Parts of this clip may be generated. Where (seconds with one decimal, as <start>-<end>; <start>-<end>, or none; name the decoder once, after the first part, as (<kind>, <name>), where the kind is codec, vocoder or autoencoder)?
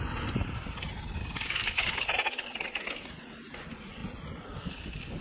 1.2-2.0 (codec, DAC)